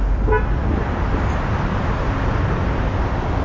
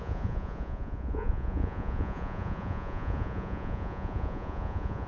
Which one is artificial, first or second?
second